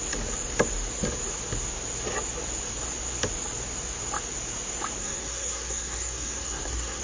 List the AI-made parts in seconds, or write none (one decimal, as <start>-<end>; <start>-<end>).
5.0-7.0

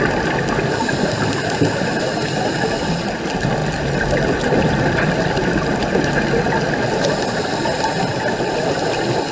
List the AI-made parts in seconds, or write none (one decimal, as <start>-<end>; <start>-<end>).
none

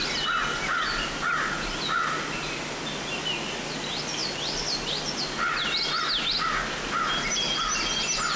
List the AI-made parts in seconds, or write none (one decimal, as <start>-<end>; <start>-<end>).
none